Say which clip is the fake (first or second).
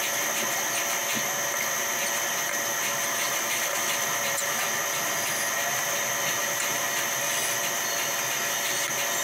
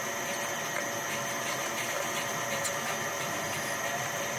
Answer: second